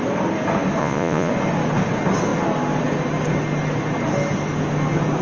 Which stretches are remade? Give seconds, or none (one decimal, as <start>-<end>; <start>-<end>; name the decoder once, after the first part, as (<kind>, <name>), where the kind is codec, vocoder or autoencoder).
0.8-1.3 (vocoder, Vocos)